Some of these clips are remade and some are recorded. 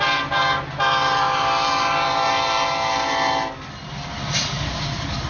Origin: recorded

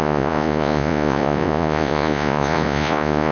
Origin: remade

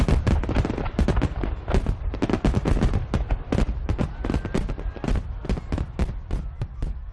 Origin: recorded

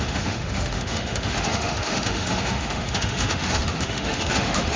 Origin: remade